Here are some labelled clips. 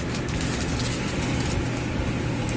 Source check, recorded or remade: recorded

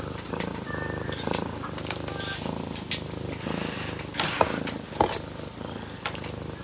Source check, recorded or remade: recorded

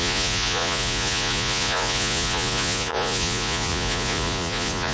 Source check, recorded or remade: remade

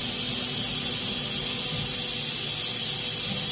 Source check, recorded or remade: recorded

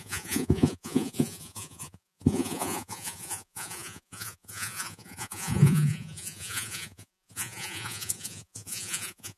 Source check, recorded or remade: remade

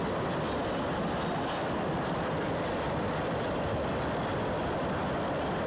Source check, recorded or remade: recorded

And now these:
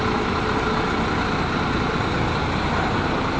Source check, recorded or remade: recorded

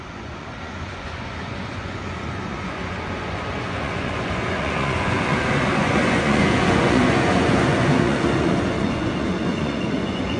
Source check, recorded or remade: remade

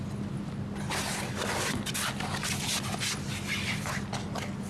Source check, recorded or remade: recorded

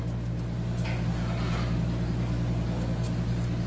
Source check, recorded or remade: recorded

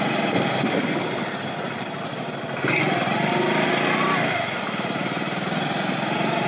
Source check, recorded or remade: recorded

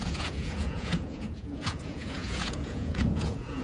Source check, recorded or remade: remade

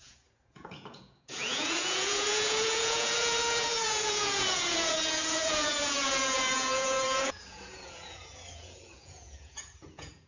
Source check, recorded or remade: remade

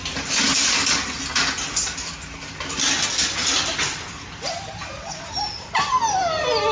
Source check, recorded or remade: recorded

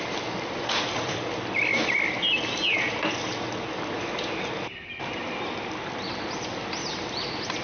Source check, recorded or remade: recorded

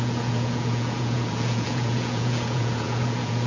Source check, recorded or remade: remade